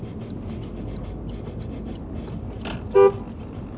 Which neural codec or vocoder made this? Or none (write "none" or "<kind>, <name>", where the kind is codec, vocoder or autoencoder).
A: none